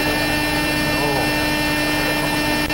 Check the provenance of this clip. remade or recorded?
recorded